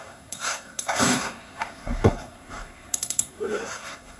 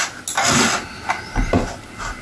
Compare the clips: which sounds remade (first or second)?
first